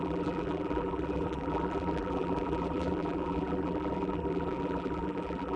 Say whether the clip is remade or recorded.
remade